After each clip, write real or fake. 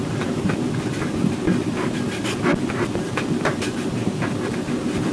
real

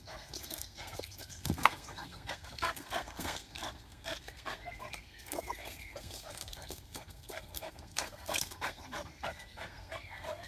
fake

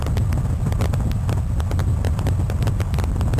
real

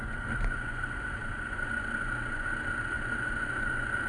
fake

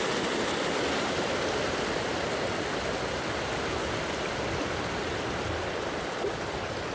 real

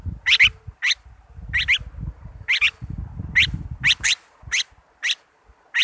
real